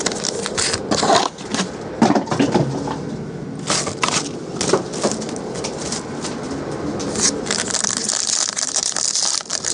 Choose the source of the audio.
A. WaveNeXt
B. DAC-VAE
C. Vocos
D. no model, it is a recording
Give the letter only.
D